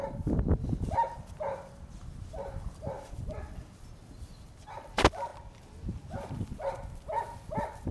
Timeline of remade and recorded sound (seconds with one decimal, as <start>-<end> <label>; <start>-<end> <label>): 0.0-5.3 remade; 5.3-7.5 recorded; 7.5-7.9 remade